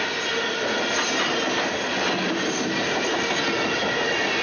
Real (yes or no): yes